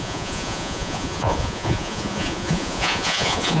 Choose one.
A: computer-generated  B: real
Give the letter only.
A